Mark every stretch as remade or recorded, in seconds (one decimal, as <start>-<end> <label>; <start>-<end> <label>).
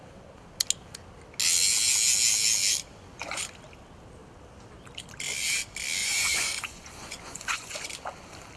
0.0-2.9 recorded; 2.9-3.4 remade; 3.4-6.0 recorded; 6.0-7.9 remade; 7.9-8.6 recorded